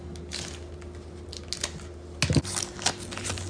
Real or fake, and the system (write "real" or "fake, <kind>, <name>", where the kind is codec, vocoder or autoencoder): real